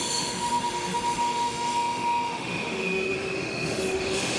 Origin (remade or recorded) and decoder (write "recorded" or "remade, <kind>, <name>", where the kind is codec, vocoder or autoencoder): remade, autoencoder, DAC-VAE